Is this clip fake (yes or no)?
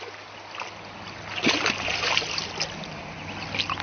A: no